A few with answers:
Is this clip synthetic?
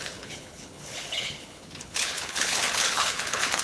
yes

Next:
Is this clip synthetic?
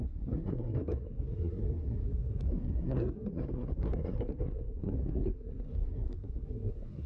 yes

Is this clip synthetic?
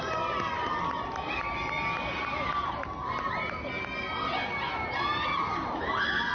no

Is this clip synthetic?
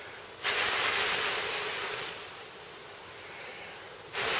no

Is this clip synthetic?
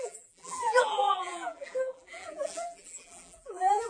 yes